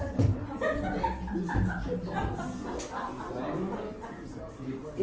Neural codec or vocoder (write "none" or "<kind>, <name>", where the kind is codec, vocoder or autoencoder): none